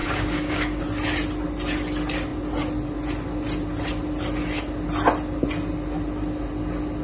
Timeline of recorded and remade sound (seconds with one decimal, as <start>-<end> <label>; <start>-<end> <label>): 0.0-0.8 remade; 0.8-7.0 recorded